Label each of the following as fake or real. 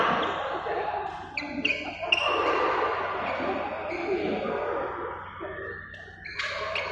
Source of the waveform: real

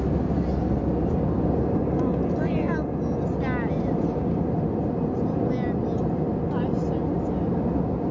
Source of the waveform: real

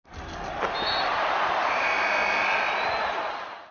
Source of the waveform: real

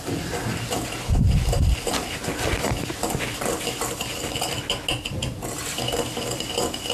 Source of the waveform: real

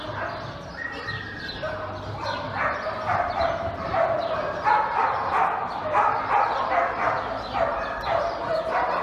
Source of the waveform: real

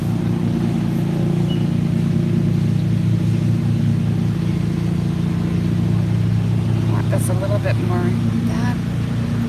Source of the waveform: real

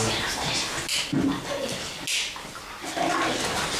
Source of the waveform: real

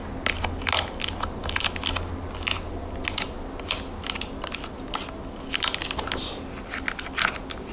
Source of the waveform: real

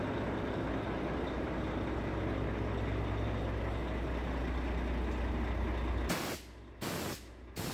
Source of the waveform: real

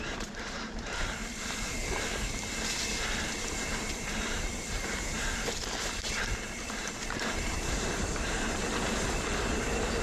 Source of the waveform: fake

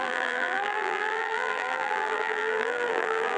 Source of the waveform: fake